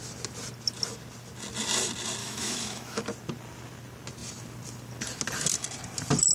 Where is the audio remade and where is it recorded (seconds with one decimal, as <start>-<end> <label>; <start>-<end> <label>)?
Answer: 0.0-2.2 recorded; 2.2-3.0 remade; 3.0-6.3 recorded